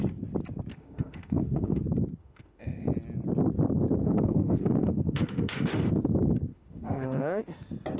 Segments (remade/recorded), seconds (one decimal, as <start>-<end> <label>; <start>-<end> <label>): 0.0-0.7 recorded; 0.7-1.8 remade; 1.8-2.2 recorded; 2.2-2.9 remade; 2.9-4.0 recorded; 4.0-5.9 remade; 5.9-6.5 recorded; 6.5-7.4 remade; 7.4-8.0 recorded